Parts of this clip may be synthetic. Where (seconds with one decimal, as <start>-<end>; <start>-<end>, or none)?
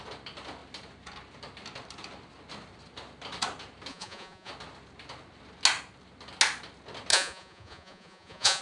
3.9-4.5; 7.1-8.6